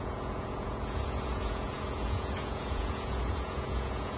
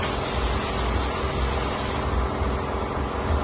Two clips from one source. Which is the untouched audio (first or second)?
second